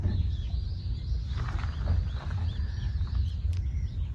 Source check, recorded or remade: recorded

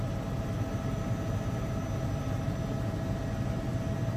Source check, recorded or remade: recorded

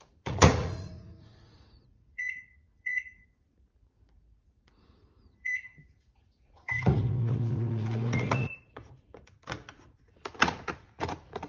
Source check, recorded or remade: remade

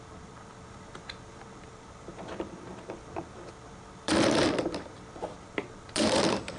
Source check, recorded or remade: remade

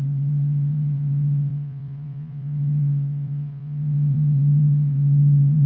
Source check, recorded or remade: remade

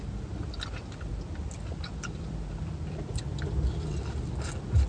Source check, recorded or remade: recorded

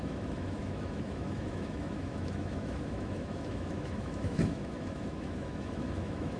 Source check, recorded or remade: remade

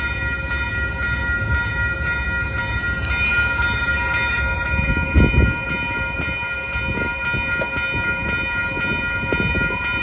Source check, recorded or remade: recorded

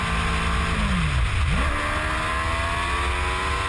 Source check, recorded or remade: recorded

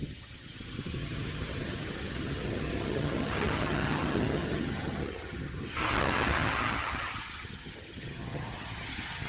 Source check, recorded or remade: remade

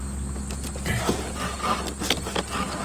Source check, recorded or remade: recorded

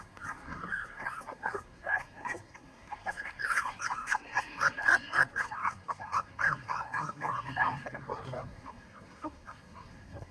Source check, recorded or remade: remade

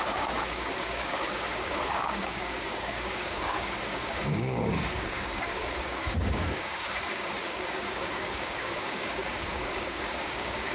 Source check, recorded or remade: remade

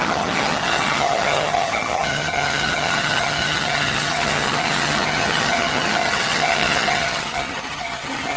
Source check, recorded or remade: remade